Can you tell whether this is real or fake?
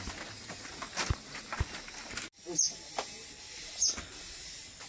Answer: real